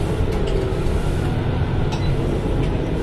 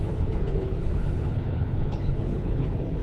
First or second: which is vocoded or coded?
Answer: second